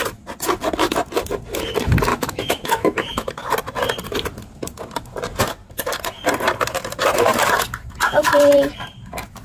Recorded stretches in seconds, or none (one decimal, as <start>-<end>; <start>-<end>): 0.0-2.1; 3.3-9.4